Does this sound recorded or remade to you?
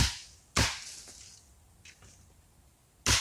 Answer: recorded